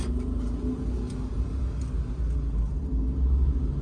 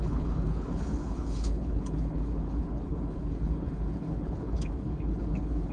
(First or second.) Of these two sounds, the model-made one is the second